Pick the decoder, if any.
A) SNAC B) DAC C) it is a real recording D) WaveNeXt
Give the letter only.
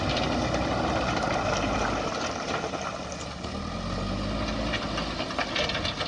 C